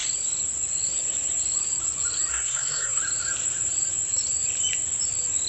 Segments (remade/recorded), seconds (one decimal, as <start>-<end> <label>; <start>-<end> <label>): 0.0-2.3 recorded; 2.3-3.0 remade; 3.0-5.5 recorded